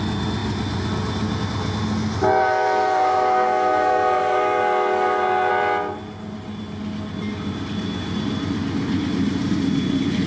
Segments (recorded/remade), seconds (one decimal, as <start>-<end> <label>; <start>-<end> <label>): 0.0-2.4 recorded; 2.4-5.5 remade; 5.5-10.3 recorded